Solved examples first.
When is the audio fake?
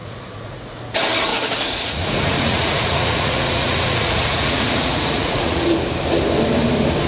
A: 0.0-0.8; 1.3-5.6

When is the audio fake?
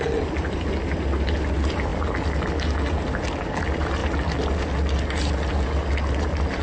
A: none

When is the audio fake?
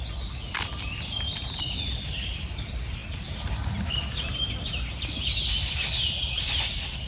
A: none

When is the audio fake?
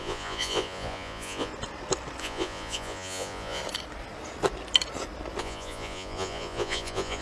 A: 0.0-1.5; 2.2-3.6; 5.4-7.2